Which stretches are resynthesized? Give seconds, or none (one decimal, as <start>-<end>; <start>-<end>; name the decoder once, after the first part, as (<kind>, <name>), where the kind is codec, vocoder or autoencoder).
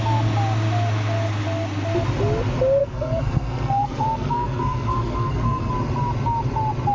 2.8-5.7 (codec, SNAC)